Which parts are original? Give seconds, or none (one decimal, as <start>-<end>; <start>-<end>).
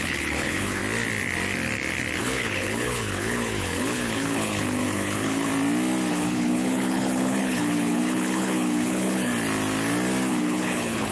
0.8-2.2; 5.5-6.1; 9.3-10.3